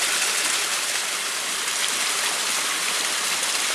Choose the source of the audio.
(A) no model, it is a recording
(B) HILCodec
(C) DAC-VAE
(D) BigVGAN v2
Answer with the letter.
A